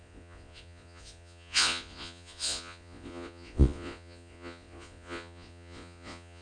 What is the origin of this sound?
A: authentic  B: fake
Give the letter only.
B